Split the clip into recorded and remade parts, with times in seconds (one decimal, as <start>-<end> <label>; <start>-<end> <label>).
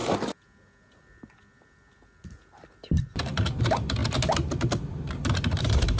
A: 0.0-3.6 recorded; 3.6-4.0 remade; 4.0-5.6 recorded; 5.6-6.0 remade